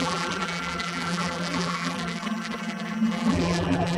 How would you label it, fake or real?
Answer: fake